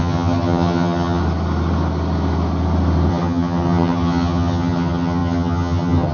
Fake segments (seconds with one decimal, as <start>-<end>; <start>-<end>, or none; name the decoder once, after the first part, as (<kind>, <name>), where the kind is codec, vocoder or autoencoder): 0.0-1.2 (vocoder, HiFi-GAN); 3.1-6.1